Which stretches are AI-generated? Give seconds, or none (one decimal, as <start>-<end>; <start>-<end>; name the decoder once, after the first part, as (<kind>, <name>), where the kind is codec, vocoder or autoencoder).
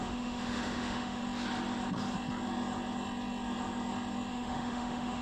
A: 0.0-1.2 (autoencoder, DAC-VAE); 4.3-5.2